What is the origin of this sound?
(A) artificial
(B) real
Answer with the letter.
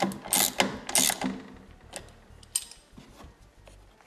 B